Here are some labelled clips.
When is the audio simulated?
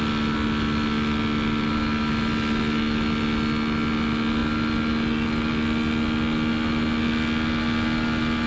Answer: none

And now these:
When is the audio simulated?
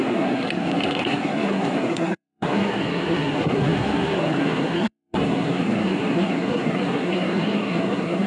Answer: 0.0-8.3 (codec, SNAC)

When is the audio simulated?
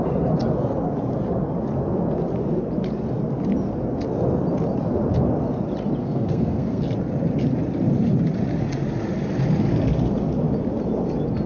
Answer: 6.0-6.8 (codec, SNAC)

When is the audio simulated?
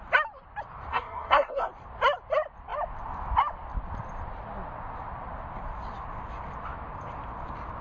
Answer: 0.9-1.7 (codec, SNAC)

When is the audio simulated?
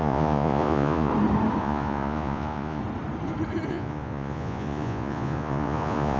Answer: 0.0-1.1 (vocoder, Vocos); 1.6-2.8; 3.7-6.2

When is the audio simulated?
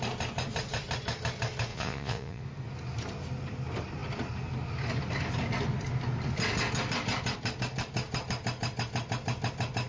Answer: 1.7-2.4 (vocoder, Vocos)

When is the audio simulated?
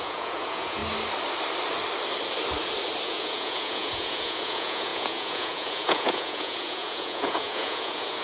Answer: 0.0-0.8 (vocoder, Vocos); 3.0-8.2